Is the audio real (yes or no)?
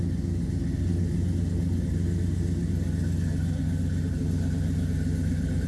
yes